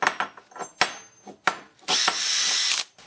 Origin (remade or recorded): recorded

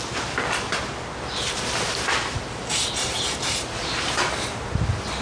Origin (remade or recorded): recorded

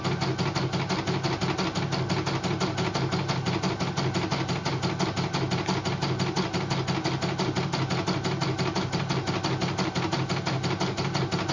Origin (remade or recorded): recorded